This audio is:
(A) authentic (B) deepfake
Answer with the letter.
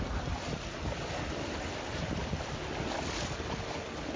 A